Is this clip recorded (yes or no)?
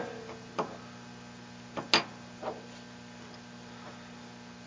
yes